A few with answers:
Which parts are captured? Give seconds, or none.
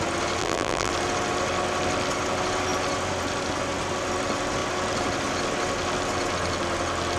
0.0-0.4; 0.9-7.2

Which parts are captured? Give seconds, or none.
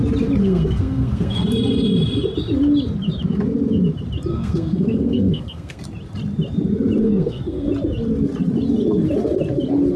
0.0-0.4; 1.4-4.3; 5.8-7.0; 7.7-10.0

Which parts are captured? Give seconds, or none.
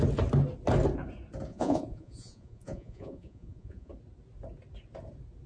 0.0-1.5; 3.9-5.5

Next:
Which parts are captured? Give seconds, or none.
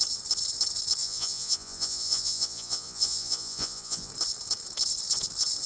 0.0-1.0; 4.1-5.7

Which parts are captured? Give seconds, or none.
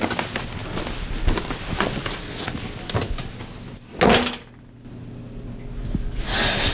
0.0-6.7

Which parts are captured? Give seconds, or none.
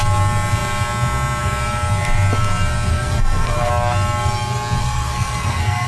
0.0-2.9; 3.7-4.8